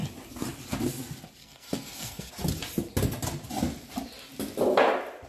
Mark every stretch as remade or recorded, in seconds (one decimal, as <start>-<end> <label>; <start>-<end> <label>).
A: 0.0-1.4 recorded; 1.4-2.3 remade; 2.3-5.3 recorded